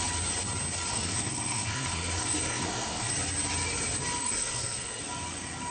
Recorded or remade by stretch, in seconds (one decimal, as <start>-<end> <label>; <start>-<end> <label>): 0.0-0.9 recorded; 0.9-3.1 remade; 3.1-4.2 recorded; 4.2-5.0 remade; 5.0-5.7 recorded